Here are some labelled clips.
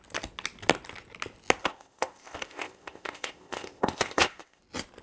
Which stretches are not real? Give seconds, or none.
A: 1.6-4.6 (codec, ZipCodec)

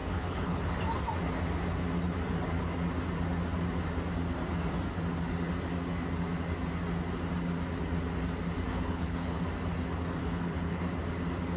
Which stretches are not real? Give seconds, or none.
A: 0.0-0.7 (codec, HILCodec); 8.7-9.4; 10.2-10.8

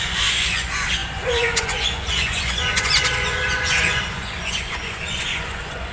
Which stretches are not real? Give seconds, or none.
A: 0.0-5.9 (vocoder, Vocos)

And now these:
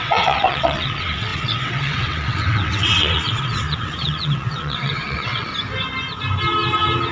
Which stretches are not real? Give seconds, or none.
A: 0.0-5.5 (vocoder, WaveNeXt)

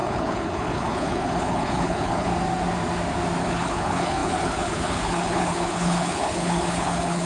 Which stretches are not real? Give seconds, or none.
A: 0.0-2.3 (codec, HILCodec); 3.4-7.3